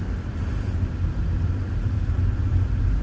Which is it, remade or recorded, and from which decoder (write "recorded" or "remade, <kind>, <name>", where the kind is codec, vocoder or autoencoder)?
recorded